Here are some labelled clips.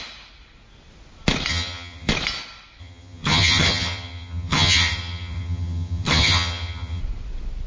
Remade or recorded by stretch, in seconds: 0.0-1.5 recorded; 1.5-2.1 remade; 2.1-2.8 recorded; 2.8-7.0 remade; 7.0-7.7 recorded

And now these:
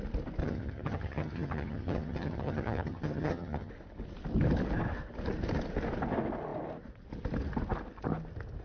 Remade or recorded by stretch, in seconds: 0.0-0.4 recorded; 0.4-3.7 remade; 3.7-8.6 recorded

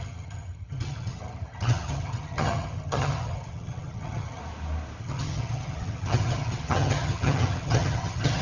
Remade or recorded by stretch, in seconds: 0.0-4.4 remade; 4.4-5.0 recorded; 5.0-8.4 remade

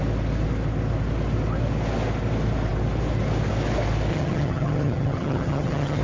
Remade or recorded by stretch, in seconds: 0.0-4.1 recorded; 4.1-6.0 remade

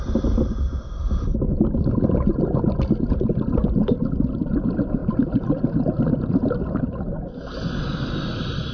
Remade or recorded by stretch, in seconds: 0.0-8.7 recorded

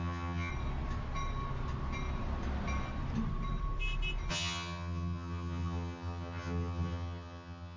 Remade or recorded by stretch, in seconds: 0.0-0.5 remade; 0.5-4.3 recorded; 4.3-7.8 remade

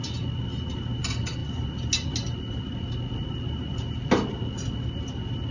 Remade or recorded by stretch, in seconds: 0.0-5.5 recorded

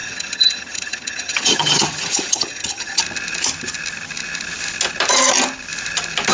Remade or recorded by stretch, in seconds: 0.0-3.0 remade; 3.0-6.3 recorded